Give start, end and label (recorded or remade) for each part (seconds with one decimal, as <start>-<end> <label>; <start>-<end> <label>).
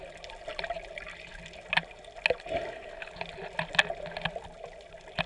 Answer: 0.0-5.3 recorded